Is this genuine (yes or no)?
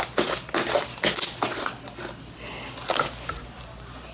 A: yes